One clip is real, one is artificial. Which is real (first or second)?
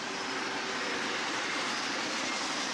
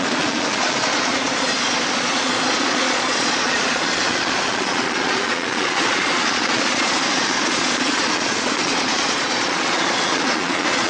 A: first